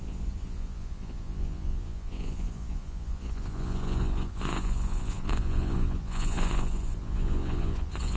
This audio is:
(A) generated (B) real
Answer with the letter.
A